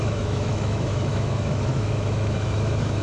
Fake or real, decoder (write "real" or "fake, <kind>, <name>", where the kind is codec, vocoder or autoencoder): fake, autoencoder, DAC-VAE